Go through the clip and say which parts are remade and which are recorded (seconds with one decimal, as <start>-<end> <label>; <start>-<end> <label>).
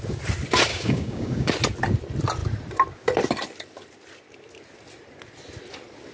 0.0-0.7 recorded; 0.7-1.5 remade; 1.5-6.1 recorded